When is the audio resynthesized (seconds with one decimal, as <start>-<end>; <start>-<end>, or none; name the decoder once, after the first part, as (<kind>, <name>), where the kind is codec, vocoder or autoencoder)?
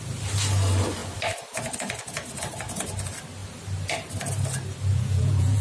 4.9-5.6 (vocoder, Vocos)